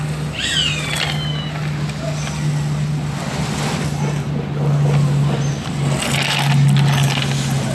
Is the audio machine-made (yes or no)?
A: no